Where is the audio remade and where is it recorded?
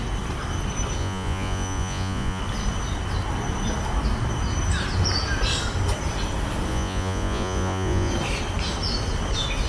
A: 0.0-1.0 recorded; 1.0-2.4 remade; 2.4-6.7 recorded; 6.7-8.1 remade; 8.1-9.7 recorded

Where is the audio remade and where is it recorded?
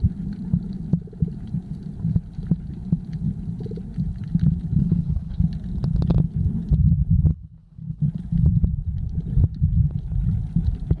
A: 0.0-4.8 recorded; 4.8-5.4 remade; 5.4-7.3 recorded; 7.3-8.0 remade; 8.0-11.0 recorded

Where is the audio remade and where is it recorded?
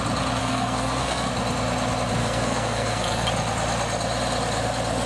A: 0.0-0.4 recorded; 0.4-1.3 remade; 1.3-2.2 recorded; 2.2-3.3 remade; 3.3-5.1 recorded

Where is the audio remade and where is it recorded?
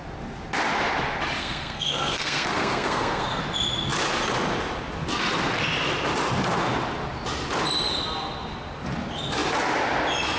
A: 0.0-1.4 recorded; 1.4-3.4 remade; 3.4-10.4 recorded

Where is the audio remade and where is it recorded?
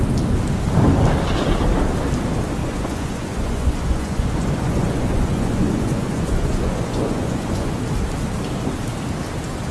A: 0.0-2.6 recorded; 2.6-7.8 remade; 7.8-9.7 recorded